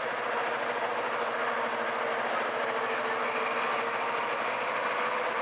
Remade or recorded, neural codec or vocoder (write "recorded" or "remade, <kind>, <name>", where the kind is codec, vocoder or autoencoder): recorded